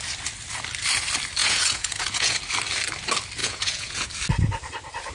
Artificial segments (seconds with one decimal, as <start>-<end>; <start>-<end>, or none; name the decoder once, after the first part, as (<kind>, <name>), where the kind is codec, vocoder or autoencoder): 1.4-2.4 (vocoder, Vocos); 3.4-4.1